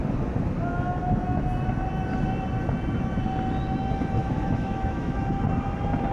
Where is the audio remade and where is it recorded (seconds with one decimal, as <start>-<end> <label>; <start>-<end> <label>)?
0.0-4.2 recorded; 4.2-5.2 remade; 5.2-6.1 recorded